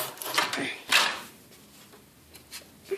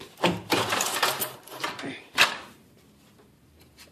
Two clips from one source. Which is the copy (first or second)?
second